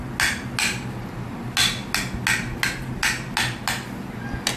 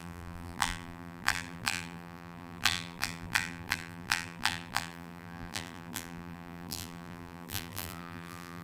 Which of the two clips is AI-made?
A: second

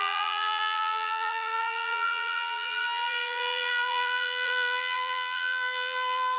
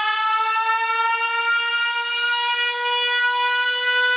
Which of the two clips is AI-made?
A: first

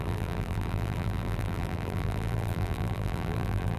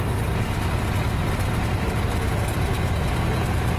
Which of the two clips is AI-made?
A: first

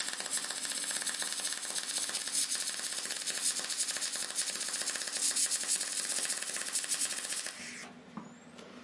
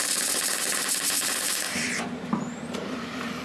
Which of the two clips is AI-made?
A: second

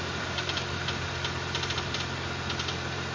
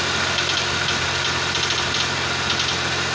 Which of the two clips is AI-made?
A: first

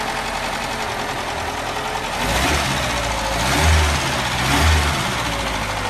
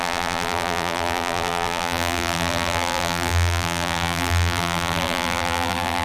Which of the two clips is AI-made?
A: second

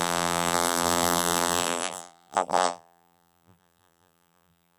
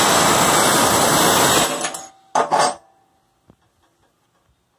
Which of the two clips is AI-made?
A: first